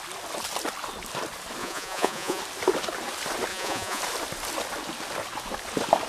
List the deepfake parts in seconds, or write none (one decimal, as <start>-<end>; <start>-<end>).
1.6-2.4; 3.5-4.0